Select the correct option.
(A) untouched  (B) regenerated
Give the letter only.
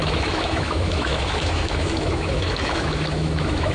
B